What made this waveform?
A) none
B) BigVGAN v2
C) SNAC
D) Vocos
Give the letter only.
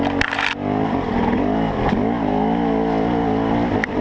A